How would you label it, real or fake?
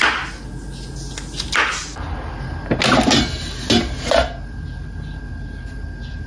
real